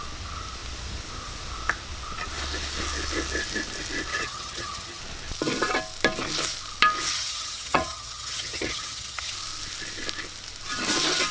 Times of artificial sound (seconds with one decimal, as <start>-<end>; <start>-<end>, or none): 4.1-5.0; 7.1-9.3